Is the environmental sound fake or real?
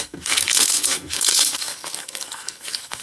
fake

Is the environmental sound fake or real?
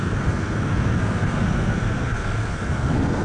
fake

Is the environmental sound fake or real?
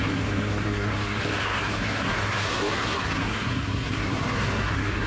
fake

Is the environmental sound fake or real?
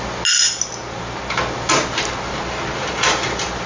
real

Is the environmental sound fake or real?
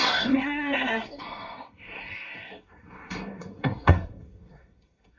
fake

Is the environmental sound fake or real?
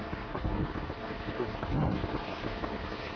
fake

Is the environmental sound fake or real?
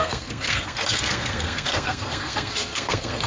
fake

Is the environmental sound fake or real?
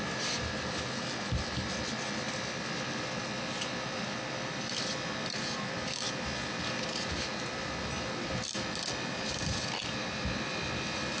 real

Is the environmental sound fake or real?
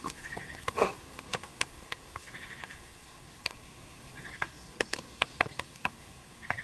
fake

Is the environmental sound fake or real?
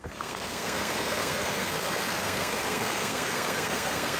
fake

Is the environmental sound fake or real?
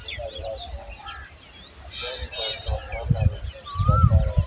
real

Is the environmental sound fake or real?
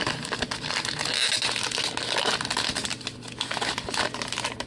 real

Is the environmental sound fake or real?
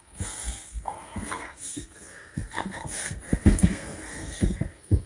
fake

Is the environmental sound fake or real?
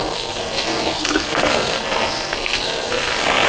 fake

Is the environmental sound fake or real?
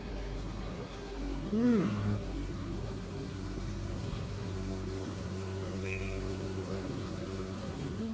fake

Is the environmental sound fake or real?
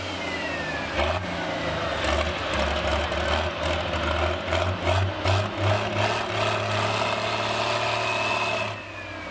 real